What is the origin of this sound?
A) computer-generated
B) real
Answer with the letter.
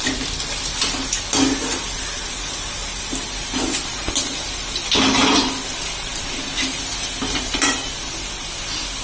B